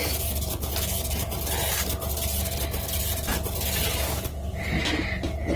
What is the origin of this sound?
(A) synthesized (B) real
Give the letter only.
B